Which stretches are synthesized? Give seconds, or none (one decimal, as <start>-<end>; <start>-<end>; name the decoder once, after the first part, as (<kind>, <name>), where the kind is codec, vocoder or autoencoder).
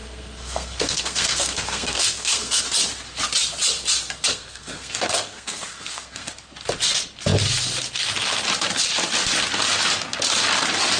0.0-2.6 (codec, SNAC); 4.3-6.3